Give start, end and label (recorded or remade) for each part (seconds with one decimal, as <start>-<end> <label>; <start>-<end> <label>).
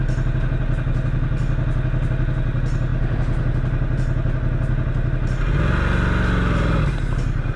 0.0-7.6 recorded